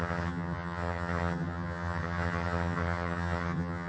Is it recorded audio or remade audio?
remade